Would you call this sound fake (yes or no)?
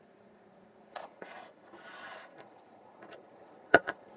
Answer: yes